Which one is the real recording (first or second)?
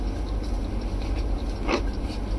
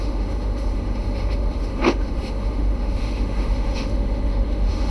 first